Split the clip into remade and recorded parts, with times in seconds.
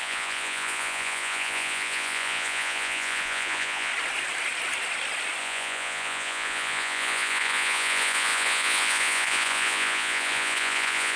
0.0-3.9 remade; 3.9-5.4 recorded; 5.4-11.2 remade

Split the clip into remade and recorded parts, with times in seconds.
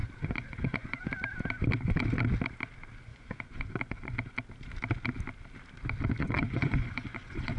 0.0-1.1 remade; 1.1-3.1 recorded; 3.1-4.1 remade; 4.1-6.2 recorded; 6.2-7.6 remade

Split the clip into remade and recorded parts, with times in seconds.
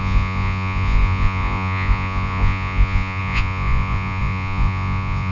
0.0-5.3 remade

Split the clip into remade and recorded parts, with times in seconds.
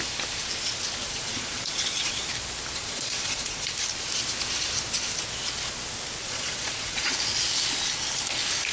0.0-1.0 recorded; 1.0-2.2 remade; 2.2-2.8 recorded; 2.8-3.7 remade; 3.7-6.2 recorded; 6.2-7.1 remade; 7.1-8.7 recorded